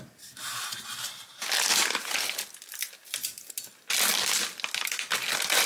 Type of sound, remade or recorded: recorded